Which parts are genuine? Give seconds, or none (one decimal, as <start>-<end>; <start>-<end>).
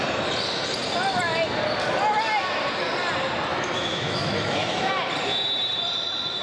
0.0-3.5; 4.9-6.4